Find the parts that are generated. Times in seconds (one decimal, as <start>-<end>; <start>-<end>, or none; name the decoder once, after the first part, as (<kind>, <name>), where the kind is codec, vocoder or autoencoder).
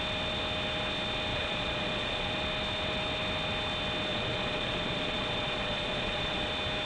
1.3-2.3 (vocoder, Vocos); 4.1-6.5